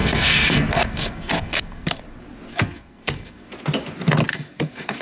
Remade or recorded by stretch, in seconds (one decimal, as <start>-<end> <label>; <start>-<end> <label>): 0.0-2.0 remade; 2.0-2.5 recorded; 2.5-3.5 remade; 3.5-4.3 recorded; 4.3-5.0 remade